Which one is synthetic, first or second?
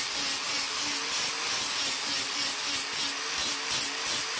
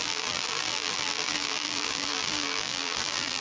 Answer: second